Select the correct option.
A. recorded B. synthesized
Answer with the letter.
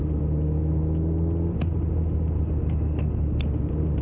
A